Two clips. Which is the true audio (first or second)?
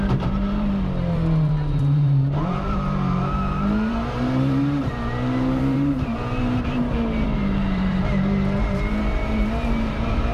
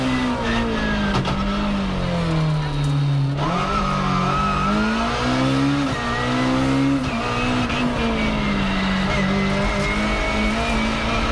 second